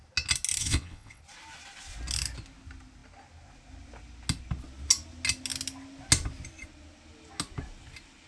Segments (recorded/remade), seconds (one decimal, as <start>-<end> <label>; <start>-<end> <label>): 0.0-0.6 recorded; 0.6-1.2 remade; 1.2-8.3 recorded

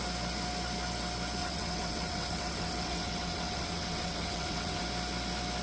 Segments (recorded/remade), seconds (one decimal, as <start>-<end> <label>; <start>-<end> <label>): 0.0-1.4 recorded; 1.4-4.8 remade; 4.8-5.6 recorded

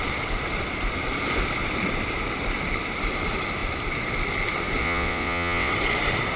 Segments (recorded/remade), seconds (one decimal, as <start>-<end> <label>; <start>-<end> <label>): 0.0-4.8 recorded; 4.8-5.7 remade; 5.7-6.4 recorded

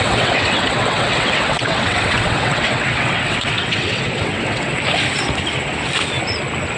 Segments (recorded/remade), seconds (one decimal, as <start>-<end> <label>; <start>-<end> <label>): 0.0-4.7 remade; 4.7-6.8 recorded